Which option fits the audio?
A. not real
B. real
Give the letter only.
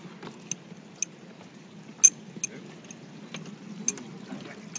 B